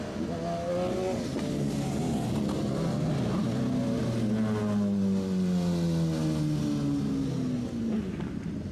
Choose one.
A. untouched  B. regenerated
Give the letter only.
A